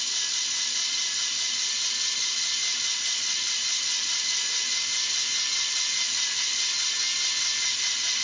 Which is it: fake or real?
real